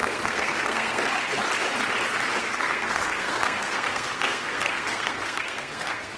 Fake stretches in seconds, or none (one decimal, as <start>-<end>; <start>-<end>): 0.0-1.4; 2.4-6.2